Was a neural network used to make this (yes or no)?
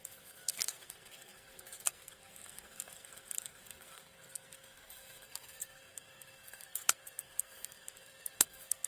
yes